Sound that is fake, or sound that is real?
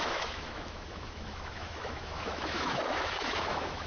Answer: fake